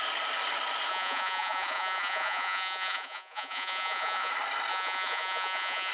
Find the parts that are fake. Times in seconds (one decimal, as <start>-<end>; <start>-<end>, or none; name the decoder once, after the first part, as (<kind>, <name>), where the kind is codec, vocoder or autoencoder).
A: 0.9-4.3 (vocoder, Vocos); 4.7-5.9